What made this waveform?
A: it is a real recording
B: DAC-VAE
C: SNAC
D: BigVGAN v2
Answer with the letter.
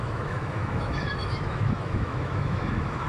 B